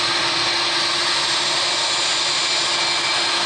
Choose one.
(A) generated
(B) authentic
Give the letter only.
B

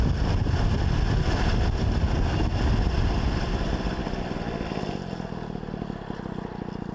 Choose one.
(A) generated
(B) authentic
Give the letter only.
B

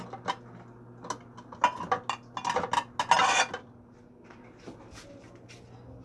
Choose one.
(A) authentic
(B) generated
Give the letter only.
A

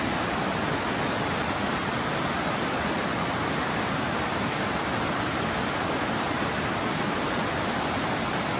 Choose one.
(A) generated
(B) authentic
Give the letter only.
B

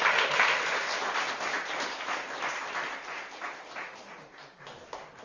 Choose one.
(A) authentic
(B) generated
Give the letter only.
A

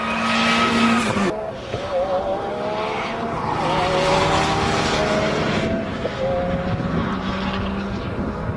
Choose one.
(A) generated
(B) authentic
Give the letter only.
B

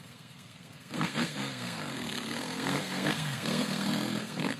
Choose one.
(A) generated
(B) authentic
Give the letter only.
A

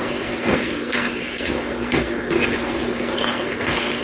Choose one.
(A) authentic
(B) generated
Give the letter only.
B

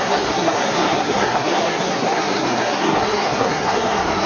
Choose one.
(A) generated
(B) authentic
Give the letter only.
A